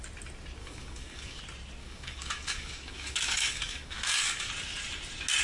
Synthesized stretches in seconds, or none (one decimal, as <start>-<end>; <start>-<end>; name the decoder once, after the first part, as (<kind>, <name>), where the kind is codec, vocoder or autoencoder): 0.6-1.4 (codec, DAC); 1.8-4.5